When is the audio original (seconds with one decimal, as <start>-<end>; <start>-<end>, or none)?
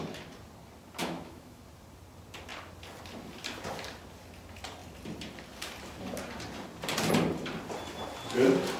0.0-1.0; 1.6-8.8